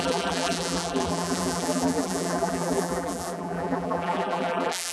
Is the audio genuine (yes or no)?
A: no